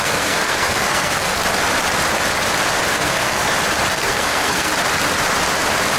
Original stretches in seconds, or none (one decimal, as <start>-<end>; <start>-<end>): 1.4-2.9; 3.4-3.9; 4.7-6.0